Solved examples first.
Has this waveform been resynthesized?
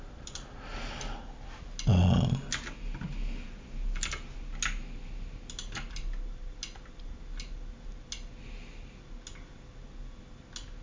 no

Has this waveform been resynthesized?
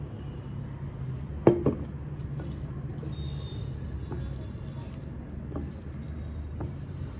no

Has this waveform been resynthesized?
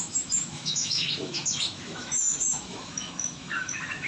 yes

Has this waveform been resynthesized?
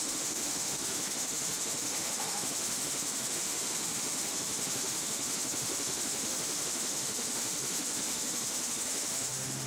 yes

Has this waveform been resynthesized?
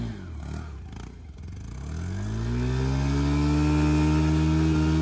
no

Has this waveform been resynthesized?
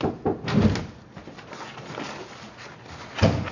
no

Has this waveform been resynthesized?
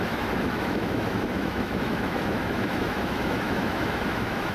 yes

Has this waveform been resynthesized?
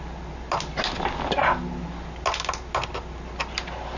no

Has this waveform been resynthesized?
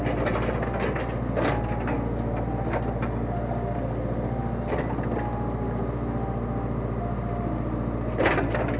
no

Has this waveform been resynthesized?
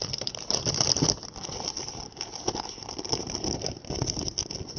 no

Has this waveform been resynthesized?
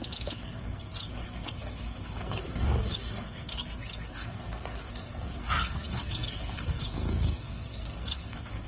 yes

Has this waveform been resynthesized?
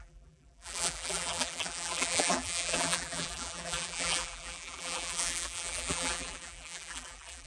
yes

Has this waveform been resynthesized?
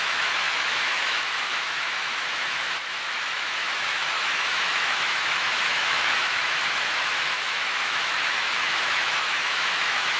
yes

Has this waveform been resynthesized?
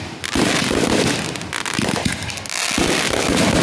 no